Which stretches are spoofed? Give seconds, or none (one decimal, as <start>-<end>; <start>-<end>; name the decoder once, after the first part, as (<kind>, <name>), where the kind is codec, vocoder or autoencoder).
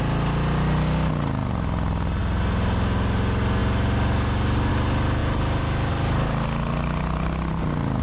none